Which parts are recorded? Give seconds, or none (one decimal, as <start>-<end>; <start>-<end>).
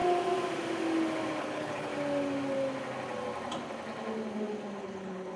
0.0-1.4; 1.9-4.8